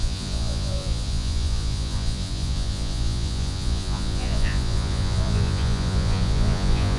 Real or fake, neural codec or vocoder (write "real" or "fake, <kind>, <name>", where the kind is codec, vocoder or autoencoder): fake, vocoder, Vocos